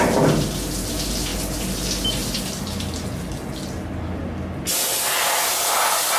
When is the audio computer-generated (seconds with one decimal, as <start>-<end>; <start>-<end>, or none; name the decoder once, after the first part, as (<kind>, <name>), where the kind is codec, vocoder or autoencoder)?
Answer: none